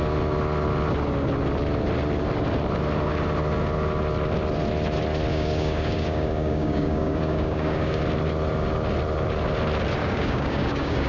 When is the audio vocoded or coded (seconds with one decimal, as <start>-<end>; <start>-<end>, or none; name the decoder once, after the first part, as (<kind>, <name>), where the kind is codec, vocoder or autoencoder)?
5.3-8.0 (codec, DAC); 10.0-11.1